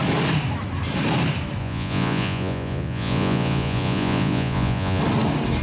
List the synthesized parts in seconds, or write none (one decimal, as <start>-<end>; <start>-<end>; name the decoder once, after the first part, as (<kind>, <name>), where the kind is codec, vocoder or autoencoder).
1.6-5.0 (vocoder, Vocos)